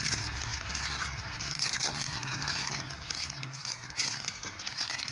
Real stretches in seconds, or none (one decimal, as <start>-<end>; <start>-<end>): none